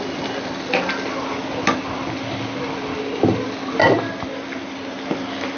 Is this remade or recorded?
recorded